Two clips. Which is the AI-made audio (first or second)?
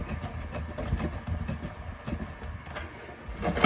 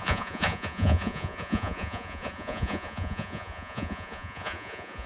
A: second